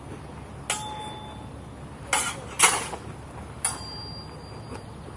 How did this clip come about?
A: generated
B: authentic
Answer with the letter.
B